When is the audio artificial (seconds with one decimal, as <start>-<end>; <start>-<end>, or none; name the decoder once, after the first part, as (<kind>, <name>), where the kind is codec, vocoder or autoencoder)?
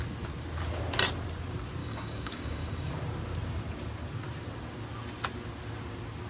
1.8-2.9 (codec, DAC)